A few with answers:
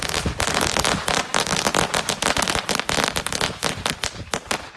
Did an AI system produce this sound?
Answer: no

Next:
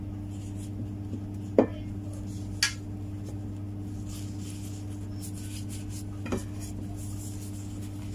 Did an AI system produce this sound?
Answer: no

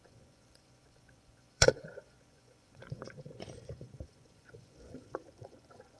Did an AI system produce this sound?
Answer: yes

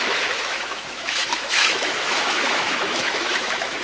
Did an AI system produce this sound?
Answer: yes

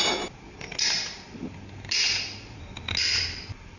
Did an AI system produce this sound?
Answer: no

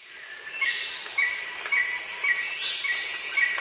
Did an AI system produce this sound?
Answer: no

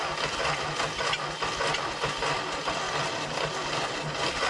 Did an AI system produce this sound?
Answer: no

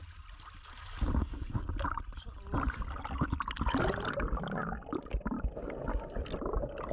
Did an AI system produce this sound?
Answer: no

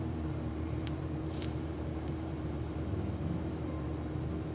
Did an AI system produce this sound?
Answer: yes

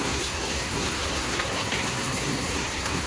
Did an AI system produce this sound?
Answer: yes